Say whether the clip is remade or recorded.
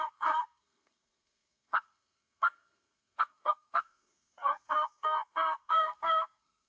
remade